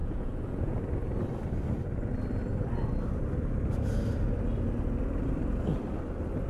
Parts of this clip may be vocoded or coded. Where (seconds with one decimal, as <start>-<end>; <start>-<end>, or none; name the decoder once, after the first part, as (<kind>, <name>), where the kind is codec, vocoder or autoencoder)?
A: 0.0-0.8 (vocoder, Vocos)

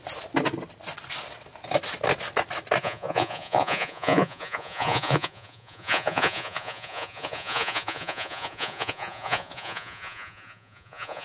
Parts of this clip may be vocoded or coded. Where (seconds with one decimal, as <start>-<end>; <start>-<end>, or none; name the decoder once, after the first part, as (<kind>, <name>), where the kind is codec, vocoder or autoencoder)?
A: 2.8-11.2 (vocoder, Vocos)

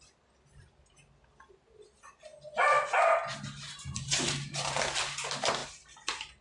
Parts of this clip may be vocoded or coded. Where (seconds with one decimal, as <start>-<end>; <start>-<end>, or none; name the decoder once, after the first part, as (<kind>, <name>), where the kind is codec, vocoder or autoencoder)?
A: none